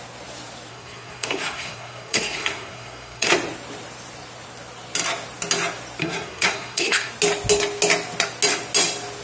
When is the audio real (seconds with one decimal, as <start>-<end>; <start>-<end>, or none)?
0.0-0.7; 3.3-6.0; 7.1-9.2